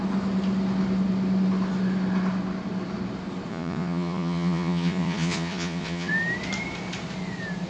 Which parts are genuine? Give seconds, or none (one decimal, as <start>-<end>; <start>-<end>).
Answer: 0.0-3.5; 6.1-7.7